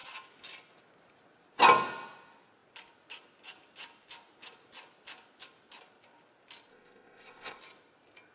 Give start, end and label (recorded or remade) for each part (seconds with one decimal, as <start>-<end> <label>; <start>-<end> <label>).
0.0-6.7 recorded; 6.7-7.6 remade; 7.6-8.3 recorded

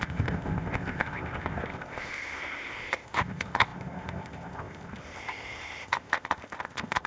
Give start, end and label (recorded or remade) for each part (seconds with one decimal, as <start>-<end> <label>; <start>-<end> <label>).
0.0-7.1 remade

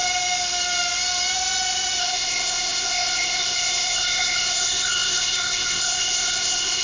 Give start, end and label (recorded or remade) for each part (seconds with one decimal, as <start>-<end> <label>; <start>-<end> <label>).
0.0-2.0 recorded; 2.0-6.8 remade

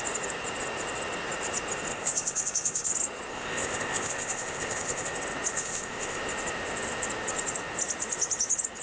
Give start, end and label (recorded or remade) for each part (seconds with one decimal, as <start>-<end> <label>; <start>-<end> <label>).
0.0-1.9 recorded; 1.9-2.9 remade; 2.9-3.3 recorded; 3.3-5.1 remade; 5.1-5.5 recorded; 5.5-6.2 remade; 6.2-8.8 recorded